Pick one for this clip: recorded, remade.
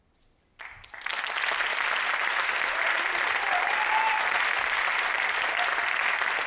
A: recorded